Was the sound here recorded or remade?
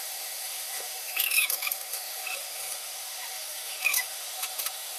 remade